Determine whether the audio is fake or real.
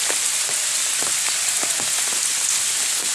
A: real